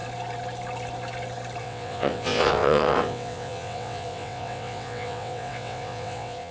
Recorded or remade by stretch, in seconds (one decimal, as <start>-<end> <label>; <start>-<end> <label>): 0.0-1.6 recorded; 1.6-6.5 remade